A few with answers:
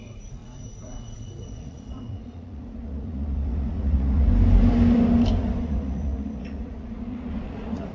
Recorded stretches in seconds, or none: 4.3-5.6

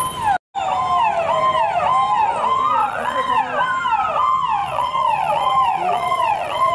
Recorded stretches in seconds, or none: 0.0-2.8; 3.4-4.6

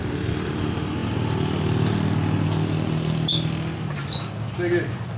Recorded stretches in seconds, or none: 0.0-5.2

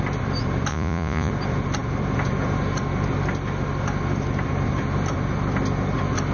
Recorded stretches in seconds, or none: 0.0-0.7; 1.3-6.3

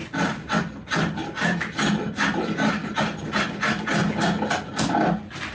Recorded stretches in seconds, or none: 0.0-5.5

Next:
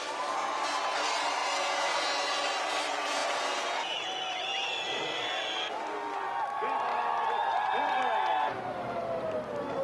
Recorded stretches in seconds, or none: 0.0-1.4; 2.0-3.2; 5.0-9.8

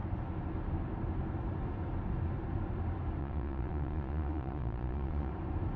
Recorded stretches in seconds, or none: 0.0-3.2; 5.3-5.8

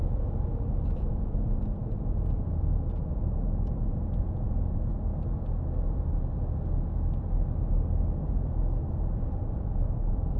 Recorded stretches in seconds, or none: 5.1-8.9